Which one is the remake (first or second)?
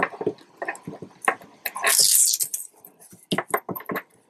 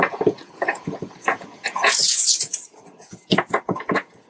second